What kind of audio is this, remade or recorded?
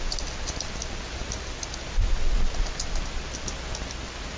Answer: recorded